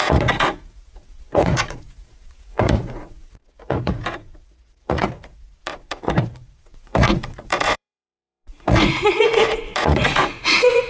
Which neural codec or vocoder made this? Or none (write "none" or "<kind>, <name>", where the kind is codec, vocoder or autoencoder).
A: vocoder, Vocos